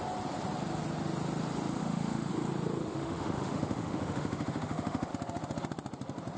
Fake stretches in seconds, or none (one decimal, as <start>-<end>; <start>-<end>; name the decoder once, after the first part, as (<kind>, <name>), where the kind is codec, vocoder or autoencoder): 1.8-2.3 (autoencoder, DAC-VAE); 2.8-5.1